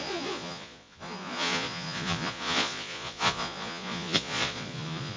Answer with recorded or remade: remade